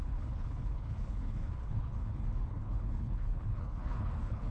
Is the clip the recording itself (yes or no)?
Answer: no